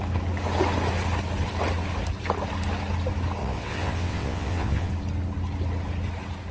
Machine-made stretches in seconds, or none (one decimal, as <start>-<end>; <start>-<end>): 3.4-4.9